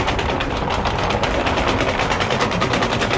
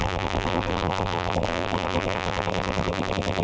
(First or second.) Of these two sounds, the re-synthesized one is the second